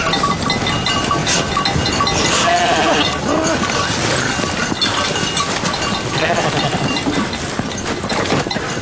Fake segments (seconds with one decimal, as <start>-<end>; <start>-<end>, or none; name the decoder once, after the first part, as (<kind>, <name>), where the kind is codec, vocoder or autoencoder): none